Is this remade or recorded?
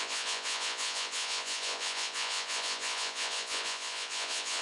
remade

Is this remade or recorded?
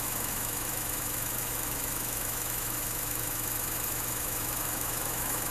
remade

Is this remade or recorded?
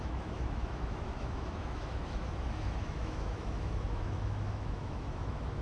remade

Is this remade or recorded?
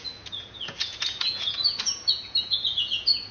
remade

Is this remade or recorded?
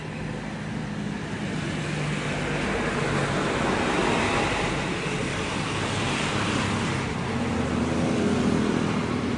remade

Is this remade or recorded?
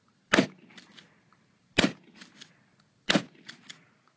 recorded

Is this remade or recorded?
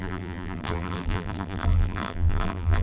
remade